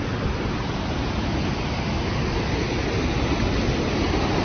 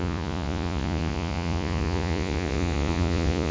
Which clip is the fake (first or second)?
second